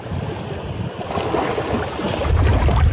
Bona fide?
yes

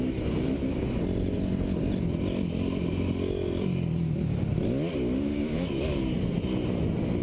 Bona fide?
yes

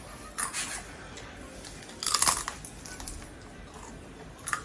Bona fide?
yes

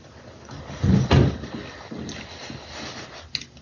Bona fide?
yes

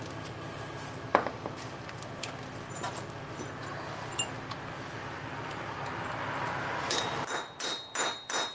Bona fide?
yes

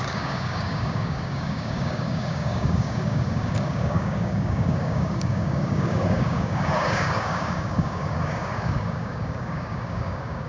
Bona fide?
no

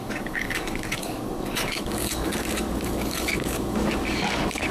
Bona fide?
no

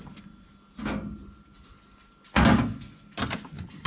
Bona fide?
yes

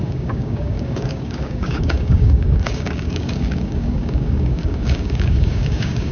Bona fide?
no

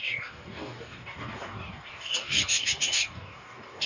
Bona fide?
no